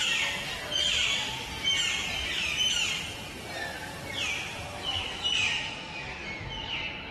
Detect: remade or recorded recorded